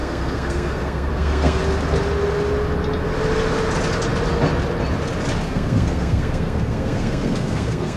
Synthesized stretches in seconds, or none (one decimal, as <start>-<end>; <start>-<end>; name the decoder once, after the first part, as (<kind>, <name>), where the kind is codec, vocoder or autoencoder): 0.0-1.6 (codec, SNAC); 5.4-8.0

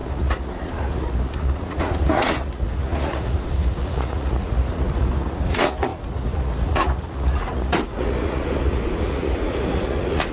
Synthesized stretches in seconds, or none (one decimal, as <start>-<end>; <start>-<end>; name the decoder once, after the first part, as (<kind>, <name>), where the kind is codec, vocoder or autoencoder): 0.0-10.3 (vocoder, Vocos)

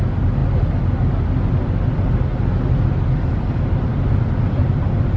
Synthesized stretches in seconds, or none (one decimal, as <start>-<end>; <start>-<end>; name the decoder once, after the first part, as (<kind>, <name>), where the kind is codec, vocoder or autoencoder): none

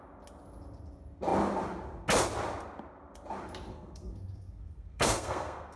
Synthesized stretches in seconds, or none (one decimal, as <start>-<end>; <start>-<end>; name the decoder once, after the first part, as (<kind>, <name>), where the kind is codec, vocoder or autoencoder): 3.7-5.8 (codec, SNAC)